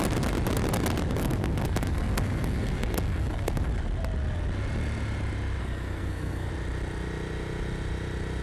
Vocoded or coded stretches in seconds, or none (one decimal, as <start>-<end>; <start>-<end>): 1.2-3.7; 5.6-6.5